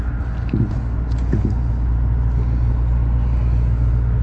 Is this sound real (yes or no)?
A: yes